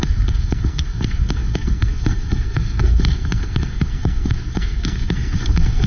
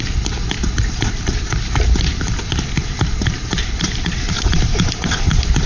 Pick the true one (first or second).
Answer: second